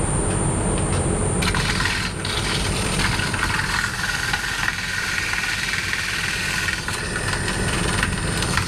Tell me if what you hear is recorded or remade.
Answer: recorded